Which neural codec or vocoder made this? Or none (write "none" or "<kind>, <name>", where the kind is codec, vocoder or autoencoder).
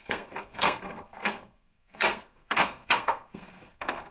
codec, SNAC